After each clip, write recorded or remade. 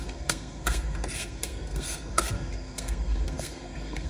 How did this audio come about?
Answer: remade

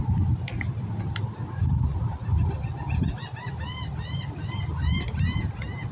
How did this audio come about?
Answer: recorded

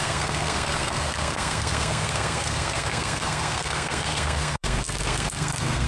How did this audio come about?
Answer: remade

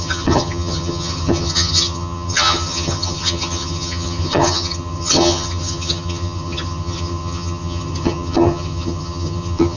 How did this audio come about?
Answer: remade